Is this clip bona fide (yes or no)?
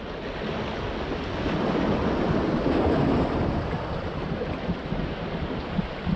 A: yes